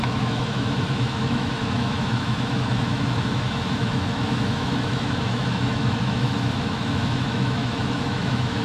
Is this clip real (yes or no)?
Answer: no